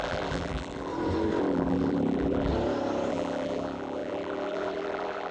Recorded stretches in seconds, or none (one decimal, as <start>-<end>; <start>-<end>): 0.9-1.4; 2.5-3.1